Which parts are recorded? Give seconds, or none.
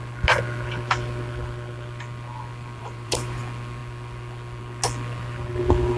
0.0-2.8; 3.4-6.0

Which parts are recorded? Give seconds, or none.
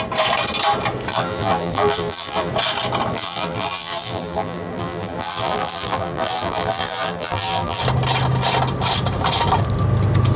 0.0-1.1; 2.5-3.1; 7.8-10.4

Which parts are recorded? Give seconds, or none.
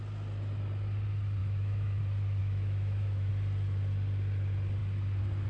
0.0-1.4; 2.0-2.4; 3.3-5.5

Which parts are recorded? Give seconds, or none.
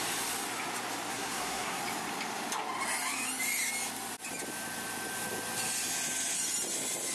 0.0-1.1; 1.8-7.1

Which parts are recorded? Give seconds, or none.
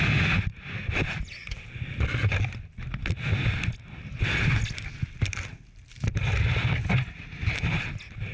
0.0-8.3